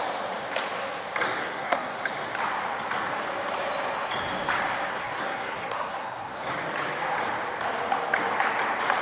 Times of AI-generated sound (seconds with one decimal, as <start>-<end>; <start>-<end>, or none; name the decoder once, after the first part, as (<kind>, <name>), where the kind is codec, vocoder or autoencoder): 1.4-2.0 (codec, SNAC); 4.9-6.5